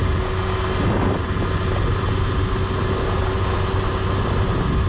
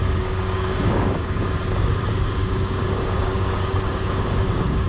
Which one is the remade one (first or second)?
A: second